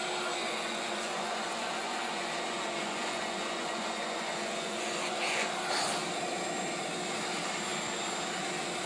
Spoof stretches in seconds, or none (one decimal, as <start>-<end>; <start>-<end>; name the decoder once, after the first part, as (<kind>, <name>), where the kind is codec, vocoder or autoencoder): 0.4-5.5 (vocoder, Vocos)